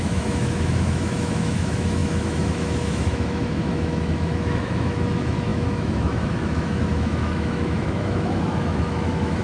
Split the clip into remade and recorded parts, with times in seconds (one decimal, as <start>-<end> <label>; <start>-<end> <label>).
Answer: 0.0-9.4 remade